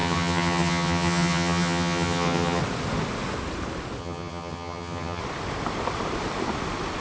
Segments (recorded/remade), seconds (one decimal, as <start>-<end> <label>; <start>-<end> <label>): 0.0-2.6 remade; 2.6-4.0 recorded; 4.0-5.2 remade; 5.2-7.0 recorded